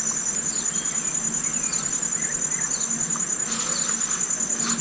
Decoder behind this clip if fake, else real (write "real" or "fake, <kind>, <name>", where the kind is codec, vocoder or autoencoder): real